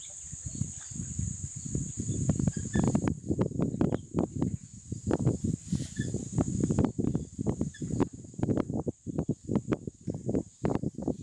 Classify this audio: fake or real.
real